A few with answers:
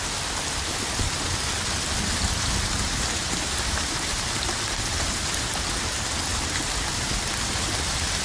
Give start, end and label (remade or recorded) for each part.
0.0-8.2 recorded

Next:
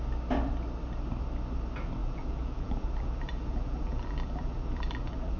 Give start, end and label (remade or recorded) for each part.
0.0-2.0 recorded; 2.0-5.4 remade

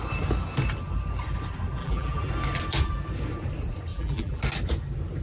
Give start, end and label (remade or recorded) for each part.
0.0-1.8 recorded; 1.8-2.3 remade; 2.3-3.9 recorded; 3.9-4.4 remade; 4.4-5.2 recorded

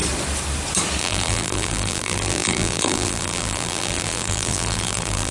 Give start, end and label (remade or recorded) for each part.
0.0-1.0 recorded; 1.0-5.3 remade

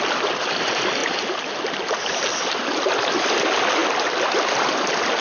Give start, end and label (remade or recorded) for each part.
0.0-1.0 recorded; 1.0-2.9 remade; 2.9-5.2 recorded

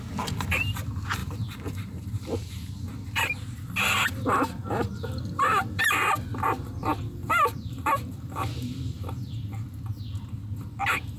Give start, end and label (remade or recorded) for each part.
0.0-1.2 recorded; 1.2-2.7 remade; 2.7-7.2 recorded; 7.2-9.8 remade; 9.8-11.2 recorded